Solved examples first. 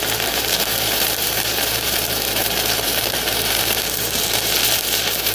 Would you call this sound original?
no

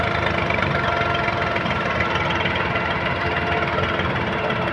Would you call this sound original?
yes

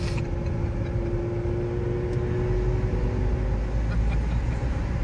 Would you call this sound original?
yes